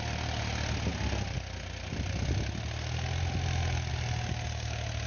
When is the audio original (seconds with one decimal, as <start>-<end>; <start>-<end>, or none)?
0.0-5.1

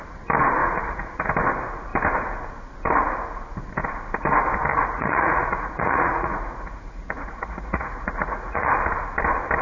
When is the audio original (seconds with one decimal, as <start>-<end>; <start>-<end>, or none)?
0.0-0.6; 1.3-4.7; 8.7-9.6

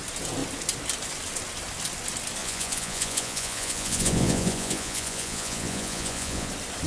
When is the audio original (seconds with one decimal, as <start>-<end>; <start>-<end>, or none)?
0.0-2.4; 6.5-6.9

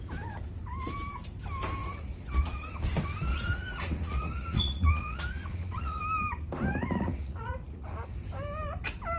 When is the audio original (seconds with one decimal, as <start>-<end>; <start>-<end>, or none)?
0.0-1.8; 2.7-3.3; 6.0-6.7; 7.9-9.2

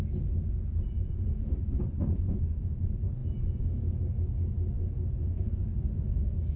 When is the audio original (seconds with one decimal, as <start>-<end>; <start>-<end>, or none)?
0.0-1.9; 2.4-5.2

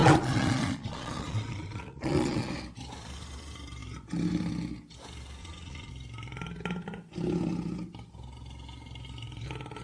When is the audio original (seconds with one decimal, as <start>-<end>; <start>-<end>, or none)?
2.5-5.4; 5.9-9.8

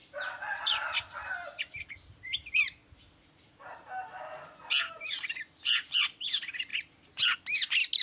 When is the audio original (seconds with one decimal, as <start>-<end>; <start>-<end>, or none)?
0.0-8.0